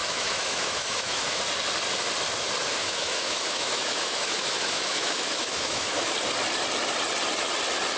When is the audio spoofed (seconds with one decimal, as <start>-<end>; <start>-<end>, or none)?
0.0-1.4; 2.8-6.1